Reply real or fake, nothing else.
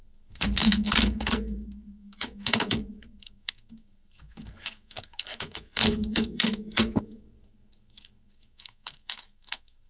fake